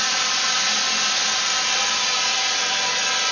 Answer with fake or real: real